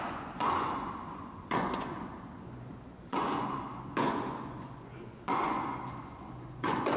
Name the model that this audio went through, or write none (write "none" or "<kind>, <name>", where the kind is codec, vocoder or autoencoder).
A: vocoder, Vocos